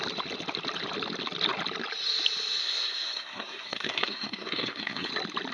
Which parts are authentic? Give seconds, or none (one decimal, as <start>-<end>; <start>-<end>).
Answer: 0.0-2.6; 5.1-5.5